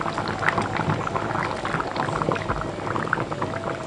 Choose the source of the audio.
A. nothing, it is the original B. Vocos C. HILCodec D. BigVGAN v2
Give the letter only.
A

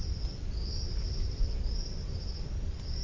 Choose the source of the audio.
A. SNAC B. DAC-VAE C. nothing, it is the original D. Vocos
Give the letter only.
C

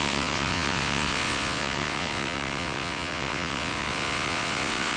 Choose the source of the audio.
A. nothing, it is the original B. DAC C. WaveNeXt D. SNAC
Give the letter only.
C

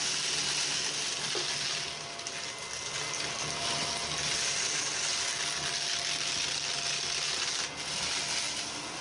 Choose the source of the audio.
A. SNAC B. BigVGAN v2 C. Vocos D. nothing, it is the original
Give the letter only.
D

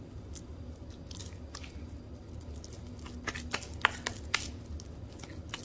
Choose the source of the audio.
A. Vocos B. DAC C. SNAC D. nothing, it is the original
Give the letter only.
D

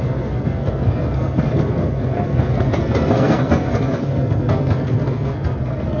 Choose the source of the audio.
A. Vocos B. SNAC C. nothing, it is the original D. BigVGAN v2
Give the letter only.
B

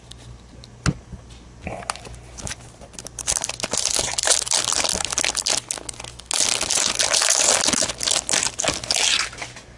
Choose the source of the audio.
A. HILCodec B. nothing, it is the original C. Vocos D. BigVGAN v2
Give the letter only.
B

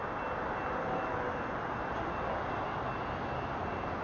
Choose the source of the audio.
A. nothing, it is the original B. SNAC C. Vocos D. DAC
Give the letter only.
A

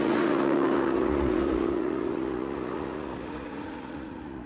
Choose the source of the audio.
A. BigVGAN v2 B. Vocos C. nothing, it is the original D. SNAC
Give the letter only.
B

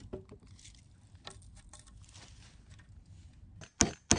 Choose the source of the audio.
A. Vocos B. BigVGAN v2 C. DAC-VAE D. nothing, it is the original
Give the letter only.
D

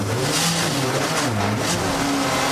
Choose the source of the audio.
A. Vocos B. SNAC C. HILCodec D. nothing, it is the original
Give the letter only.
D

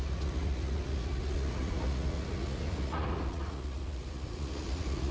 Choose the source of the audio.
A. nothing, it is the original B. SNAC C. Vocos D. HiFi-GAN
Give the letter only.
C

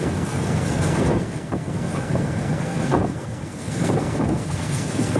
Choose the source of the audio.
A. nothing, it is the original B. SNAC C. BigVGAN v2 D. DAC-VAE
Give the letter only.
B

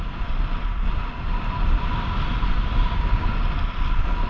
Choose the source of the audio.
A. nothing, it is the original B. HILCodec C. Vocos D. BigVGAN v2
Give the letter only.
A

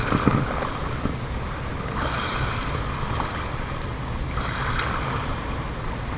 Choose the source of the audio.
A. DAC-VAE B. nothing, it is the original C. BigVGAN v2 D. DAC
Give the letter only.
B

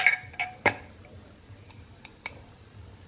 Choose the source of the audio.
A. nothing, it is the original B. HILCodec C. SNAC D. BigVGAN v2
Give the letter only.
D